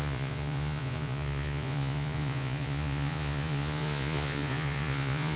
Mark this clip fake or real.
fake